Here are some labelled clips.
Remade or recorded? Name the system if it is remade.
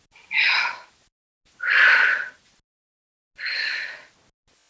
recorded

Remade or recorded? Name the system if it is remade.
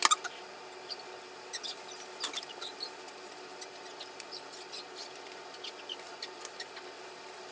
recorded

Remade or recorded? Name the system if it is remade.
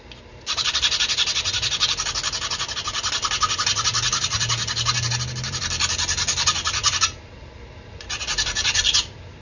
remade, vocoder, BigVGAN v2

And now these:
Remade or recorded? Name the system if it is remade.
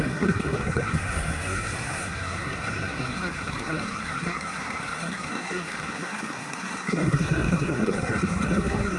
remade, codec, SNAC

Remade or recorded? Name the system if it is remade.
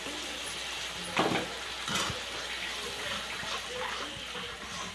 recorded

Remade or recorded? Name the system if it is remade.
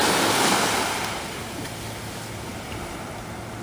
recorded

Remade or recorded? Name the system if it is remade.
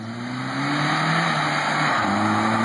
recorded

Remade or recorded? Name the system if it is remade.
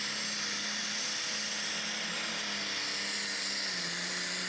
recorded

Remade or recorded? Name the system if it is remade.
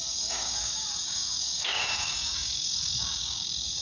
remade, codec, DAC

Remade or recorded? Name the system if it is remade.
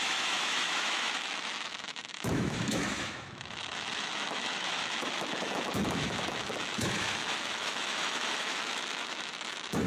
remade, autoencoder, DAC-VAE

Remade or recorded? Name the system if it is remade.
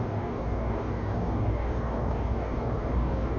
remade, codec, DAC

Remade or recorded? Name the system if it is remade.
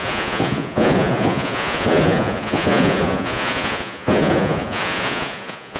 remade, vocoder, Vocos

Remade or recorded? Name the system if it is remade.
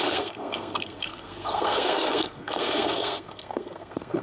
remade, codec, SNAC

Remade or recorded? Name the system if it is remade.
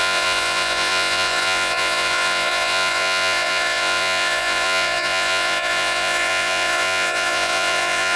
remade, vocoder, Vocos